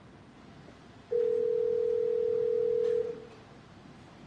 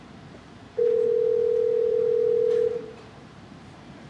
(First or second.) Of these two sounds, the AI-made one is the second